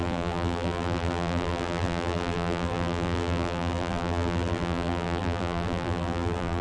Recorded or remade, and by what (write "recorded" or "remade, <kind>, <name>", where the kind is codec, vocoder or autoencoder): remade, vocoder, BigVGAN v2